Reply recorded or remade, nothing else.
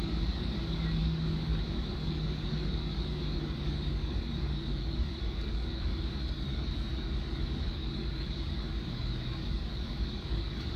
remade